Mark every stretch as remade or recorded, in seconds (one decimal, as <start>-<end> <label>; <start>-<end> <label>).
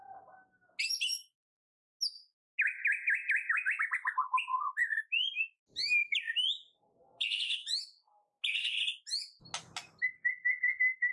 0.0-11.1 recorded